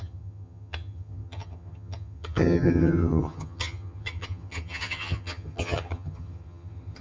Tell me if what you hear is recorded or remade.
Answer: remade